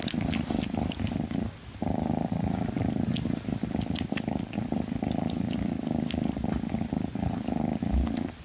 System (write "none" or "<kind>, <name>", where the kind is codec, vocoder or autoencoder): none